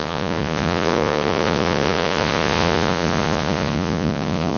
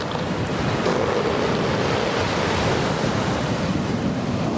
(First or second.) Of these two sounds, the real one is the second